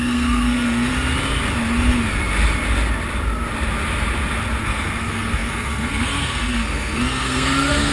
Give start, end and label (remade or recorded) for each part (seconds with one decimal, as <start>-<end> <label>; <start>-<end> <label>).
0.0-0.9 remade; 0.9-4.6 recorded; 4.6-7.9 remade